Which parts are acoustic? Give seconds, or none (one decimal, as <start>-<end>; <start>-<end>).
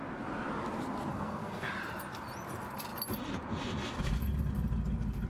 0.0-1.1; 1.7-5.3